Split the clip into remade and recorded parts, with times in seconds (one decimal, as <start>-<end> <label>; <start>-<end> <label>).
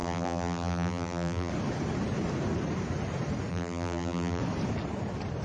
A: 0.0-1.5 remade; 1.5-3.5 recorded; 3.5-4.4 remade; 4.4-5.4 recorded